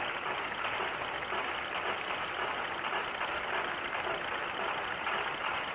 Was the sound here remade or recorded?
recorded